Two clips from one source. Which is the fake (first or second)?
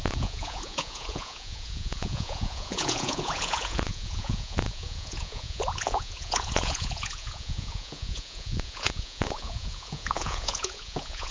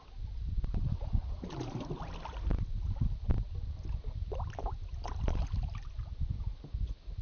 first